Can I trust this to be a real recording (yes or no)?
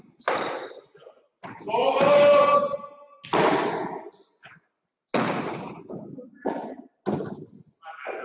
yes